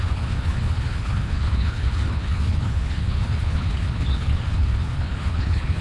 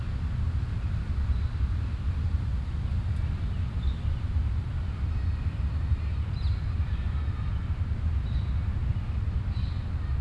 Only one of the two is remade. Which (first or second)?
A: first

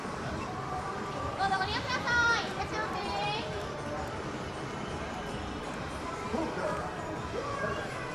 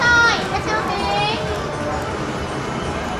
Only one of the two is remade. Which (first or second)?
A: first